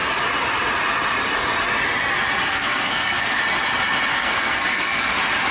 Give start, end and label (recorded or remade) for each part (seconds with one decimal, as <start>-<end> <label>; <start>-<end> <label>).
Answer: 0.0-2.5 recorded; 2.5-3.4 remade; 3.4-4.1 recorded; 4.1-5.1 remade; 5.1-5.5 recorded